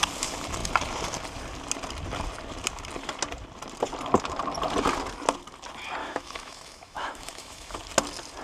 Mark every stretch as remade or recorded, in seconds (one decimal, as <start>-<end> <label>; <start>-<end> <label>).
0.0-6.0 recorded; 6.0-7.8 remade; 7.8-8.4 recorded